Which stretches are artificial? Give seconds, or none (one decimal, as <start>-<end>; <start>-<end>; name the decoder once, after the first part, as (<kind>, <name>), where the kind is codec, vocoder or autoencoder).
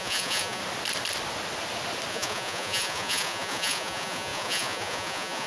0.0-0.6 (vocoder, Vocos); 2.1-5.5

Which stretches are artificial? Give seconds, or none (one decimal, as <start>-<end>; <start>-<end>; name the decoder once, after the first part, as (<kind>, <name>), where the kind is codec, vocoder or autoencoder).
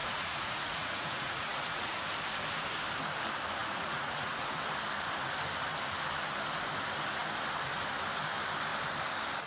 0.0-2.0 (vocoder, Vocos); 3.6-4.6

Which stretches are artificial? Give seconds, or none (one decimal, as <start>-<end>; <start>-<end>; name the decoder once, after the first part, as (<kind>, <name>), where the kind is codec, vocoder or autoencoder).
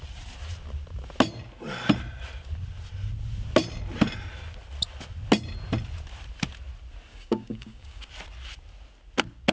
7.1-8.1 (codec, DAC)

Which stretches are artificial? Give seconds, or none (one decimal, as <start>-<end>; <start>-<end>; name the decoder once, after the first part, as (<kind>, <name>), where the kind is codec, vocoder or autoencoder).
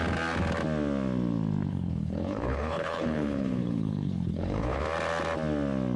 1.7-4.8 (codec, HILCodec)